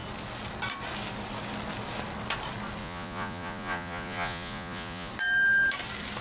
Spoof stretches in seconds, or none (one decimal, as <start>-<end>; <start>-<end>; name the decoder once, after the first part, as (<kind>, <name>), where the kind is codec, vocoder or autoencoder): 2.8-5.1 (vocoder, Vocos)